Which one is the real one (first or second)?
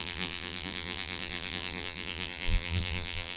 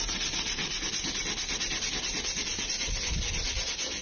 second